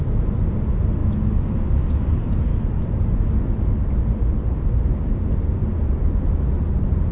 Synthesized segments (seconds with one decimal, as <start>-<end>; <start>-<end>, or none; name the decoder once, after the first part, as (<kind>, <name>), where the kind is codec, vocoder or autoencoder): none